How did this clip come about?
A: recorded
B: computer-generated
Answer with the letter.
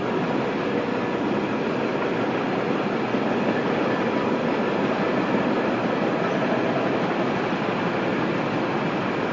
A